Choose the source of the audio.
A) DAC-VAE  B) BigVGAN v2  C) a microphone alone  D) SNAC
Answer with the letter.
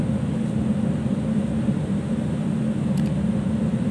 C